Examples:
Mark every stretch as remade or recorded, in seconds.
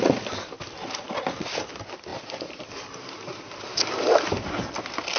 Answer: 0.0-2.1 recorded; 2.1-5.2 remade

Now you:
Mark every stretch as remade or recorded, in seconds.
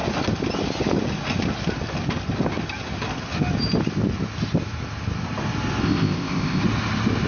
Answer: 0.0-5.8 recorded; 5.8-6.6 remade; 6.6-7.3 recorded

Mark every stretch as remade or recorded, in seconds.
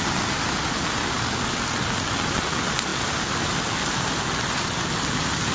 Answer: 0.0-5.5 recorded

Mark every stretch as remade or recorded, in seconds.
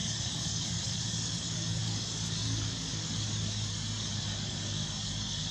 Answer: 0.0-5.5 remade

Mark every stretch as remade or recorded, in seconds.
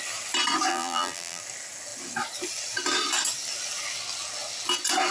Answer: 0.0-0.7 recorded; 0.7-1.4 remade; 1.4-5.1 recorded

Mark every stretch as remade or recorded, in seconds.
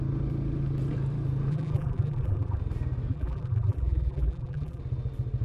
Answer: 0.0-1.5 recorded; 1.5-2.6 remade; 2.6-3.1 recorded; 3.1-4.8 remade; 4.8-5.4 recorded